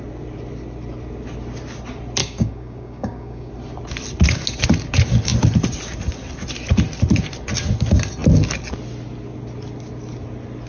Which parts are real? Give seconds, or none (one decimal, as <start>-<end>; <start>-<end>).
0.0-2.2; 3.5-10.7